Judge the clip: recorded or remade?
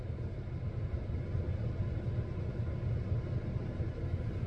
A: recorded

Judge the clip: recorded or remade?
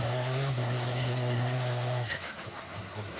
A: remade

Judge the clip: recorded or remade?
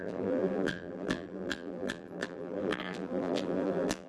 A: remade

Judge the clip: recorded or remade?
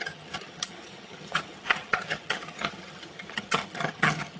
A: remade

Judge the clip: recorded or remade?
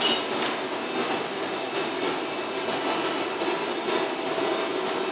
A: recorded